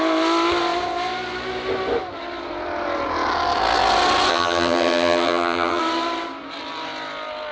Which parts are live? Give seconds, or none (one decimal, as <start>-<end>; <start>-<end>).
0.0-4.3; 5.8-7.5